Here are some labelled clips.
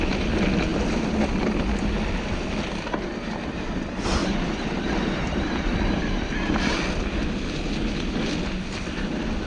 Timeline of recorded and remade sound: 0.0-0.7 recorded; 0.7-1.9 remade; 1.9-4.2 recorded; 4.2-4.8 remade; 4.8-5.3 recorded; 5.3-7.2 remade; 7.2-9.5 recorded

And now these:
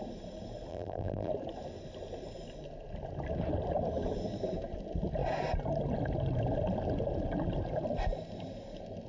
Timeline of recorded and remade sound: 0.0-0.7 recorded; 0.7-1.3 remade; 1.3-9.1 recorded

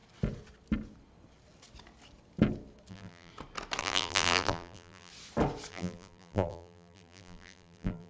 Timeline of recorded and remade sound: 0.0-2.9 recorded; 2.9-3.3 remade; 3.3-3.8 recorded; 3.8-5.1 remade; 5.1-5.7 recorded; 5.7-8.1 remade